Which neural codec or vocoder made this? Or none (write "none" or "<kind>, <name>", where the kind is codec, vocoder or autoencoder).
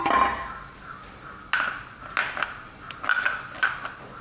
none